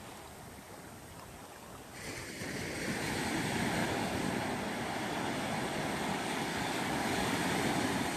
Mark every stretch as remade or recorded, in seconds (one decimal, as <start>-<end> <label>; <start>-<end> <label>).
0.0-3.8 recorded; 3.8-4.3 remade; 4.3-6.1 recorded; 6.1-7.4 remade; 7.4-8.2 recorded